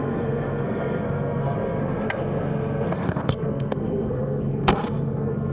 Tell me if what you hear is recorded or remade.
remade